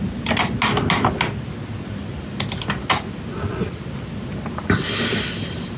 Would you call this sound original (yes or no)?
yes